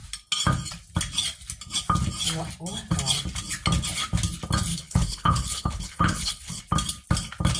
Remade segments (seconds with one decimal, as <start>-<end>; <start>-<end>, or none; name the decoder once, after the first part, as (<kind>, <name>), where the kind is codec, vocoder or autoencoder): 4.7-6.6 (codec, HILCodec)